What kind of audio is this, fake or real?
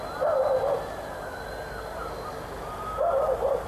real